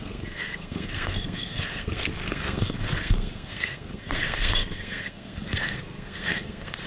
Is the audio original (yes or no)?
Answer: no